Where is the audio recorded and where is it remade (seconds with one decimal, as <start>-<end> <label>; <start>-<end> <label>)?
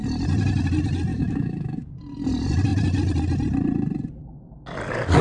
0.0-1.1 recorded; 1.1-1.9 remade; 1.9-5.2 recorded